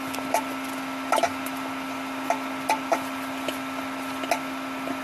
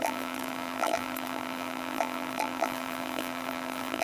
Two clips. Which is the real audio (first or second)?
first